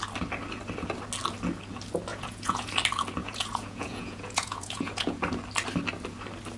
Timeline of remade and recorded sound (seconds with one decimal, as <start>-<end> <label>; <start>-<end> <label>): 0.0-2.1 recorded; 2.1-2.7 remade; 2.7-3.2 recorded; 3.2-5.2 remade; 5.2-6.6 recorded

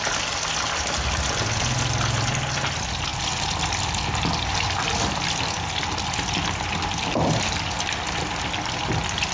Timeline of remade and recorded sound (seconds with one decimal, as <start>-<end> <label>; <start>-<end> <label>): 0.0-9.3 recorded

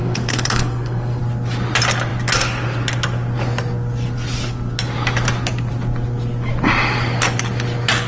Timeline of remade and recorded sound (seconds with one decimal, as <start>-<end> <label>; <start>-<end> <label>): 0.0-1.2 remade; 1.2-8.1 recorded

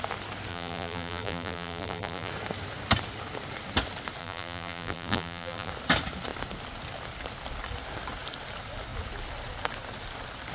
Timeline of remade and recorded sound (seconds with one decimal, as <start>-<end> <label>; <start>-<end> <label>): 0.0-0.5 recorded; 0.5-2.3 remade; 2.3-4.2 recorded; 4.2-5.7 remade; 5.7-10.5 recorded